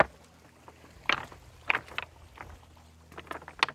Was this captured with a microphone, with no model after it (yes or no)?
yes